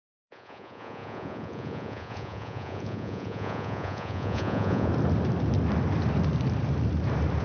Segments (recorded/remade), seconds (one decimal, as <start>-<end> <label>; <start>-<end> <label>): 0.0-4.9 remade; 4.9-7.4 recorded